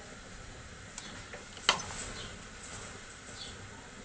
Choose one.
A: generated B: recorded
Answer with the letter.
B